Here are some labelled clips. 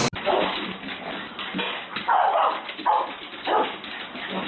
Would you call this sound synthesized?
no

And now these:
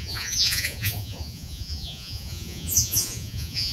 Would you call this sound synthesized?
yes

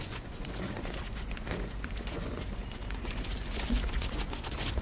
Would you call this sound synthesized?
yes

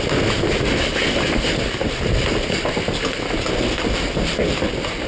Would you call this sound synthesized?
no